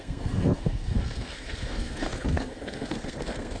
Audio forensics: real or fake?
fake